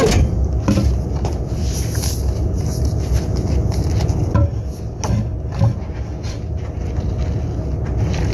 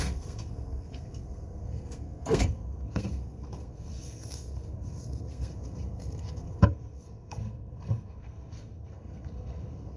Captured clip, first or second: first